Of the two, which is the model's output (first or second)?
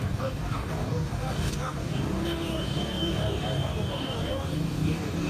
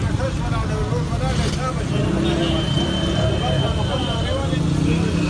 first